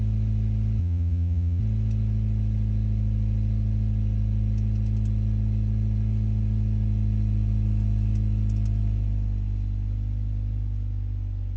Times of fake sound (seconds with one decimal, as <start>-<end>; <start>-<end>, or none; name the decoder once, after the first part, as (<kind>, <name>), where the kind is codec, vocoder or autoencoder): 0.8-1.6 (vocoder, Vocos)